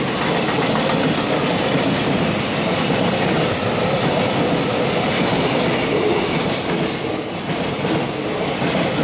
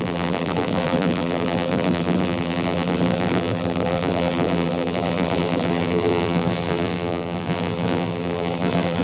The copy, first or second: second